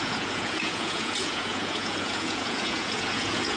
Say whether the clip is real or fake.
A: fake